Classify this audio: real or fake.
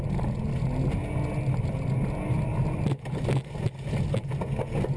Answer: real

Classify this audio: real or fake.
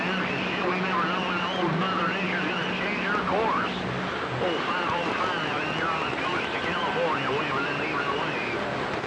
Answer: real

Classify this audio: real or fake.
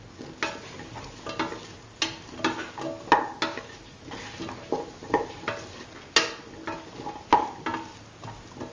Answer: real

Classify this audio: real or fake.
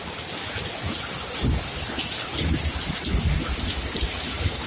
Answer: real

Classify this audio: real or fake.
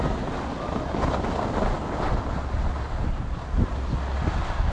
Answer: real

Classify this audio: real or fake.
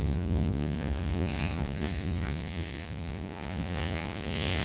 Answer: fake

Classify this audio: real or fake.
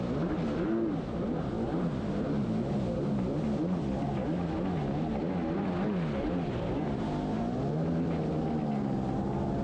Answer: real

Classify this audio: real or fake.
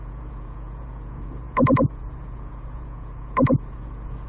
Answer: fake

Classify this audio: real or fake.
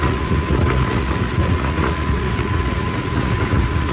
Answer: fake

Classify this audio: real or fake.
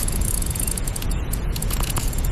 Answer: fake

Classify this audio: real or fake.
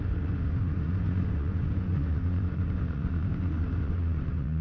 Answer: fake